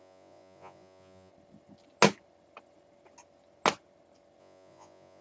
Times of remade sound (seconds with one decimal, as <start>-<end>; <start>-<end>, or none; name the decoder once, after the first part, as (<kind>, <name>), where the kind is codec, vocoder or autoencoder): 0.0-1.3 (vocoder, Vocos); 4.4-5.2